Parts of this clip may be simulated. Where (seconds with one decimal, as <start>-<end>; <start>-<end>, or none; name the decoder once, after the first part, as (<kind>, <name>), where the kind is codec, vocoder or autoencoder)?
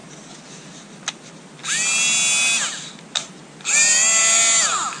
none